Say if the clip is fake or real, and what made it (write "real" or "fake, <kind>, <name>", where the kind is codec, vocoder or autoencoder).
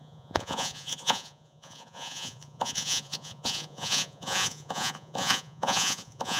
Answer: fake, vocoder, Vocos